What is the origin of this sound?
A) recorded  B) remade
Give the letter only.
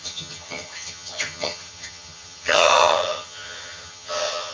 B